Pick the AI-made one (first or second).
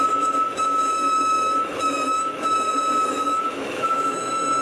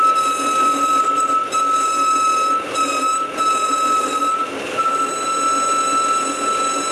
first